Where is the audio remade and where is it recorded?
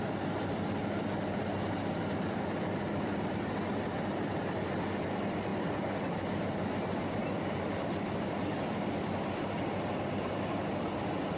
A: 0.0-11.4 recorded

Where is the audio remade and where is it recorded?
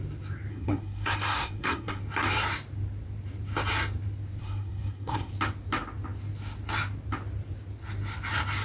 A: 0.0-0.5 recorded; 0.5-2.0 remade; 2.0-4.4 recorded; 4.4-5.3 remade; 5.3-8.6 recorded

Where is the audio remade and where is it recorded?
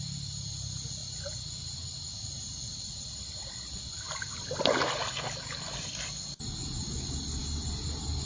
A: 0.0-8.3 recorded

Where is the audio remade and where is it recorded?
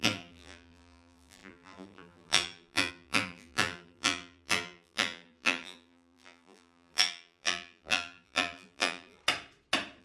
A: 0.0-9.2 remade; 9.2-10.0 recorded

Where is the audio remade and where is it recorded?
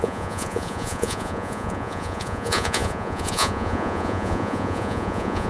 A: 0.0-5.5 remade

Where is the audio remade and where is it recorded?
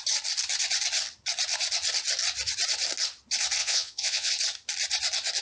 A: 0.0-3.6 recorded; 3.6-4.3 remade; 4.3-5.4 recorded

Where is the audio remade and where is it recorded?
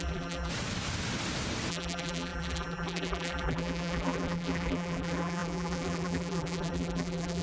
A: 0.0-0.5 remade; 0.5-1.7 recorded; 1.7-7.4 remade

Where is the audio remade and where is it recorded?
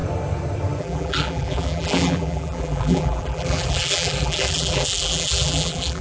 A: 0.0-0.8 recorded; 0.8-6.0 remade